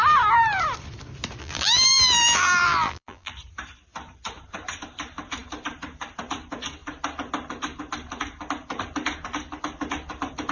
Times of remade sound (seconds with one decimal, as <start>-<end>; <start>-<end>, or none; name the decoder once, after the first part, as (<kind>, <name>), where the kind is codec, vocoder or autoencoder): 1.4-3.3 (vocoder, BigVGAN v2)